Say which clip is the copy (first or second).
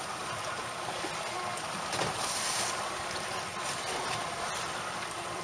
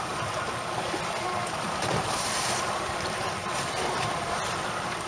second